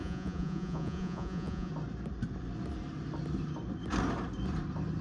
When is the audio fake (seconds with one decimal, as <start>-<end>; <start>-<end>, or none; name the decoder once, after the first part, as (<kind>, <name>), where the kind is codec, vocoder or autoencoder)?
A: 0.0-1.7 (vocoder, Vocos)